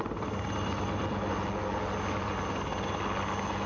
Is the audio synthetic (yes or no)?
no